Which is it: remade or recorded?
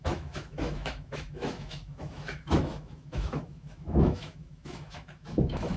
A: remade